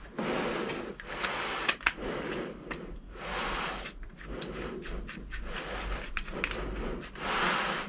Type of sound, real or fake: real